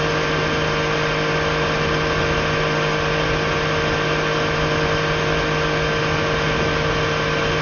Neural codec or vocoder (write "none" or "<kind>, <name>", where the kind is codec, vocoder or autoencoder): none